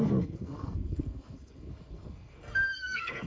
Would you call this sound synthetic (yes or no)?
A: yes